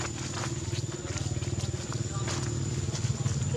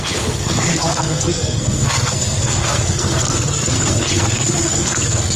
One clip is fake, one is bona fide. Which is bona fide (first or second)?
first